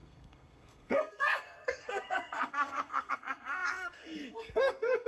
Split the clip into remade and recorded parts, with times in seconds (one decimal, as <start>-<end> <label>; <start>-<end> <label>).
0.0-5.1 remade